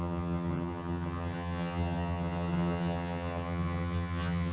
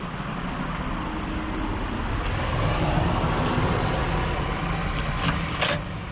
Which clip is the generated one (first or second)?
first